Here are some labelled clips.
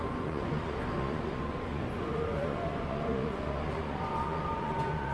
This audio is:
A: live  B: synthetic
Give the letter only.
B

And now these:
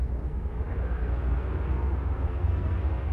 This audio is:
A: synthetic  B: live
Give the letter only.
A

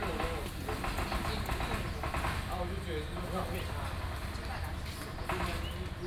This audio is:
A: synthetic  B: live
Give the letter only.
B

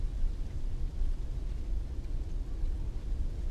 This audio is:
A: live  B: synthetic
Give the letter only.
A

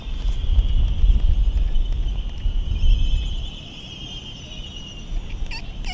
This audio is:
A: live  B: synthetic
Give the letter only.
A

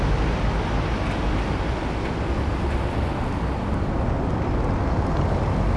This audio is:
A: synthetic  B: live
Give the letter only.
B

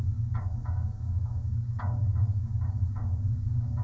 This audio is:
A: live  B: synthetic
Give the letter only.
B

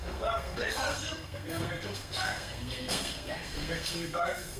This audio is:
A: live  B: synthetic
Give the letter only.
B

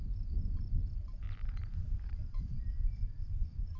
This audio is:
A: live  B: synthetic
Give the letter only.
B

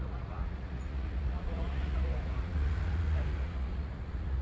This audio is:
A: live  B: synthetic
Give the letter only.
B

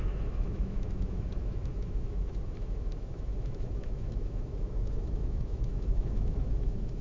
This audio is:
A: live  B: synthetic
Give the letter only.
B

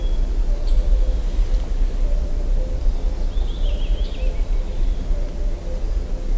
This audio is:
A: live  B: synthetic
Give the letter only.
A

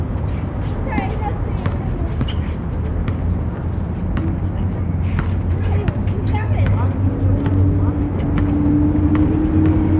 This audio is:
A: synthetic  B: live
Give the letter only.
B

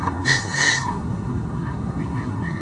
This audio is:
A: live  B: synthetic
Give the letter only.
B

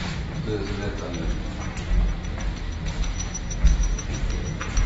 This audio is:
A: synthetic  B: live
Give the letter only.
B